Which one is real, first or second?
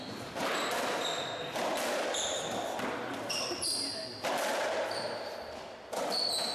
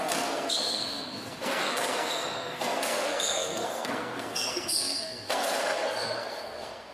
first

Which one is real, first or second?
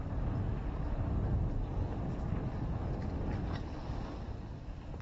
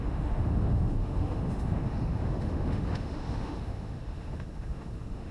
first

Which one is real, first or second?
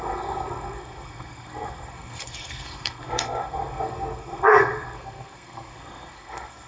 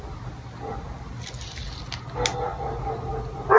second